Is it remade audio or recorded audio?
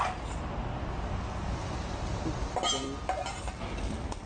recorded